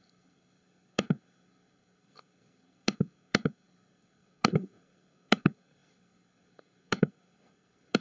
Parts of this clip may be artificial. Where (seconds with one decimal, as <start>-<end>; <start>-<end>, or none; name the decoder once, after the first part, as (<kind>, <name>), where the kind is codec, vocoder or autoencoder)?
0.0-8.0 (codec, SNAC)